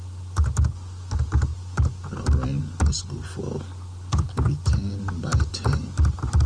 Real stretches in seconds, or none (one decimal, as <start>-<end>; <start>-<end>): 0.0-6.5